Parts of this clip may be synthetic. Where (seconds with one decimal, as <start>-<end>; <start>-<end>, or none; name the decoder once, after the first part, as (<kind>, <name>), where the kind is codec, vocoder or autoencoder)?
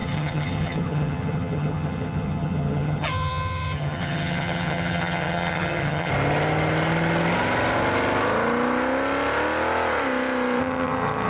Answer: 0.0-6.1 (vocoder, HiFi-GAN); 10.6-11.3